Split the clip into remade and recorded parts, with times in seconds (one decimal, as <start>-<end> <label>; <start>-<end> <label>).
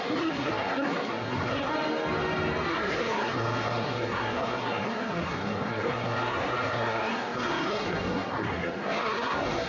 0.0-1.7 remade; 1.7-2.7 recorded; 2.7-9.7 remade